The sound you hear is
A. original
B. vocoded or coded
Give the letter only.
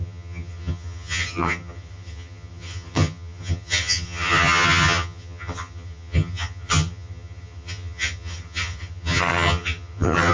B